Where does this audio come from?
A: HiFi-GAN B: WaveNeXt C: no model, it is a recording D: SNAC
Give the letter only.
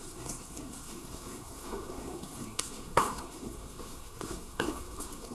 D